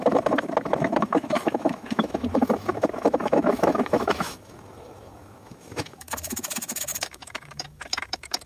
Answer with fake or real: fake